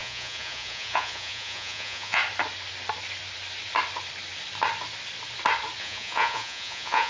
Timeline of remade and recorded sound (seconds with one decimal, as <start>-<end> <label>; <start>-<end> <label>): 0.0-2.2 remade; 2.2-5.8 recorded; 5.8-7.1 remade